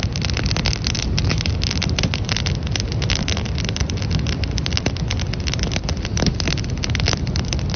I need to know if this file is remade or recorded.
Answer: recorded